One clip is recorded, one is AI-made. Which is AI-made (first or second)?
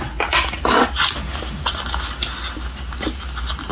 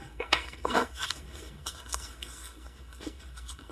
second